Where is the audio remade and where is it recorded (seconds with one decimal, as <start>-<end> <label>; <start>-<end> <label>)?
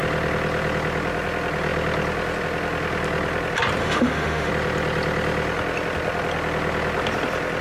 0.0-3.8 recorded; 3.8-4.5 remade; 4.5-7.6 recorded